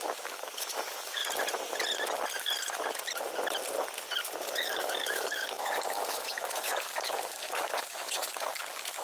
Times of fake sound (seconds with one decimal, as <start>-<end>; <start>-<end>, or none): 0.0-1.2; 4.5-9.0